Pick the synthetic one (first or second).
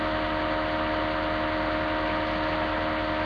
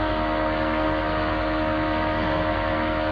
second